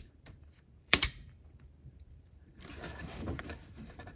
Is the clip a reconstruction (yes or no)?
yes